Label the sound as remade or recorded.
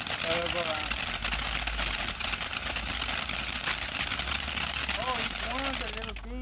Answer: recorded